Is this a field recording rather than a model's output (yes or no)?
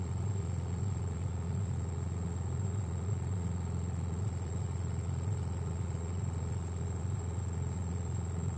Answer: no